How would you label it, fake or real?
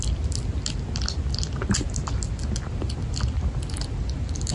real